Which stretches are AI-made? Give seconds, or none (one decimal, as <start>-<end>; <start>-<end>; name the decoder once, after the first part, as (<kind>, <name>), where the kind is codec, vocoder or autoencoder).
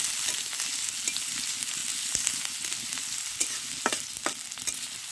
none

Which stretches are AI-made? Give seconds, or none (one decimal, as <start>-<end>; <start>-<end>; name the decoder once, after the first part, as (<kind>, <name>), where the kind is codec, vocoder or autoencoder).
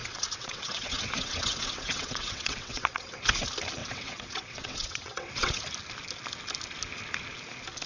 0.0-3.3 (vocoder, WaveNeXt); 3.8-5.6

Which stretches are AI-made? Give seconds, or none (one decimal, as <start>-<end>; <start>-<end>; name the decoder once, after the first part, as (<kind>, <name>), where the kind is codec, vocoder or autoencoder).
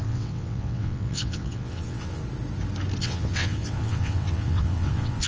0.0-2.2 (vocoder, WaveNeXt); 3.0-5.3